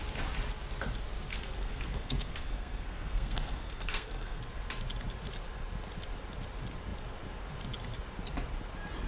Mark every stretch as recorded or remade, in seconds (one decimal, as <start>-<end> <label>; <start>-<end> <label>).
0.0-1.3 recorded; 1.3-4.4 remade; 4.4-9.1 recorded